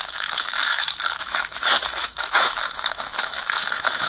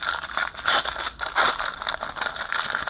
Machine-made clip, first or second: first